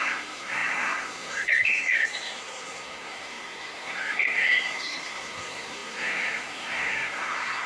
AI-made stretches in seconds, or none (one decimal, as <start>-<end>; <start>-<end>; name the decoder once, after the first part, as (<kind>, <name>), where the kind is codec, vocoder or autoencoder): 0.0-7.7 (codec, SNAC)